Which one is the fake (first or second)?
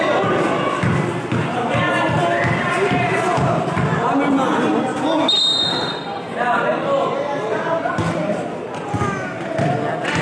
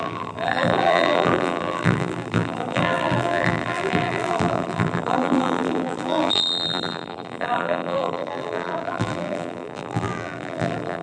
second